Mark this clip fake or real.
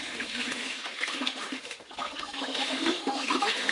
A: fake